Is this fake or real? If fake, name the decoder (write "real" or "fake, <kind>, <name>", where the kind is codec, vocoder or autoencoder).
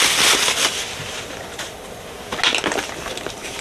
real